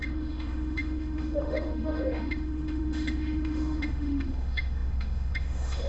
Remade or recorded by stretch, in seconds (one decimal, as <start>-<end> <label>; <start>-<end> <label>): 0.0-5.9 remade